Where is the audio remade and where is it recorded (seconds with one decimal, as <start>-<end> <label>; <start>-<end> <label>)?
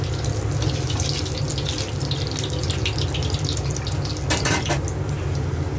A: 0.0-5.8 recorded